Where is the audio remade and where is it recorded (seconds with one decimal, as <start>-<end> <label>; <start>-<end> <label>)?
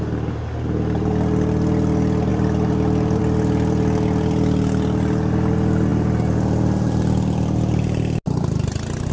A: 0.0-9.1 recorded